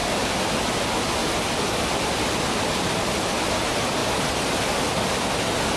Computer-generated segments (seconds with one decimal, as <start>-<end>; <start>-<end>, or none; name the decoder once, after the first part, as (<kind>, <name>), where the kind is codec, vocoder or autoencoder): none